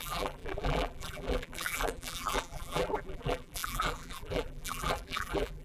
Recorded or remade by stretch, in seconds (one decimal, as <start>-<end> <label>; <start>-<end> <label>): 0.0-5.6 remade